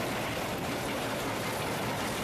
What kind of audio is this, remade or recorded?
recorded